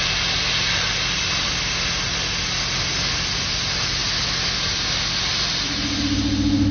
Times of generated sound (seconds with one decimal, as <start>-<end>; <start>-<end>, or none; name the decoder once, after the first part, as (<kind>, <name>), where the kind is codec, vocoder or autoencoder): none